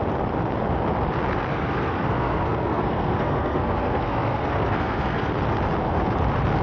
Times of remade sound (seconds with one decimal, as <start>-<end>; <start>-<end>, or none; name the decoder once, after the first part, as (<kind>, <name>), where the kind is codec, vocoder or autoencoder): 1.5-5.3 (codec, SNAC)